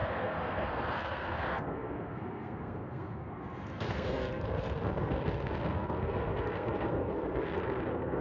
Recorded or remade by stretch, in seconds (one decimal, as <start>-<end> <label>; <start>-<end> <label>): 0.0-8.2 remade